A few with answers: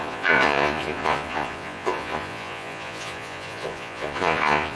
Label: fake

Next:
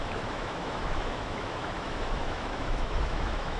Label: fake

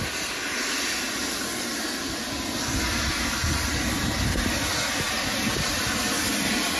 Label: real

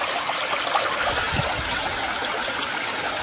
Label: real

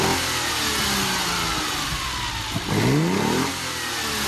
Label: real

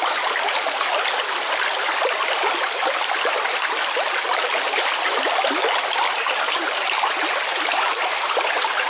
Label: real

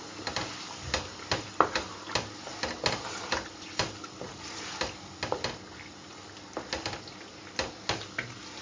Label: real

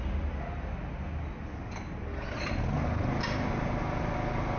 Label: real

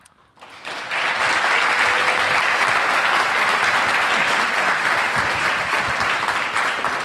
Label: real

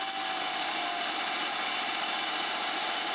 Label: real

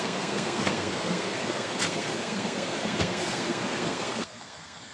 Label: fake